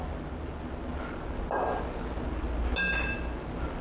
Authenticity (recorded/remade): recorded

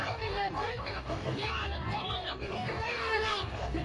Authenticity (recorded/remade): remade